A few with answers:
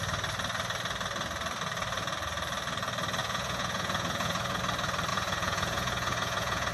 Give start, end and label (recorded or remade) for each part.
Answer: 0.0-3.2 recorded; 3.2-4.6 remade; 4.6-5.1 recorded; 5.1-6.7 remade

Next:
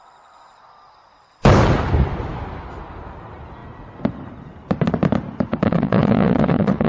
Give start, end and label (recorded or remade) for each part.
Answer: 0.0-5.5 recorded; 5.5-6.9 remade

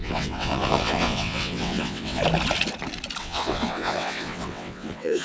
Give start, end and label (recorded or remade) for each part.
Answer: 0.0-2.2 remade; 2.2-3.2 recorded; 3.2-5.2 remade

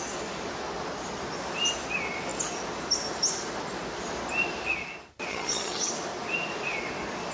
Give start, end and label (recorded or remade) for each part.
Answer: 0.0-5.3 recorded; 5.3-5.9 remade; 5.9-7.3 recorded

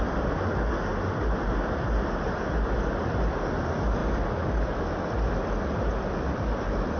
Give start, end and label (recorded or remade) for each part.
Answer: 0.0-7.0 recorded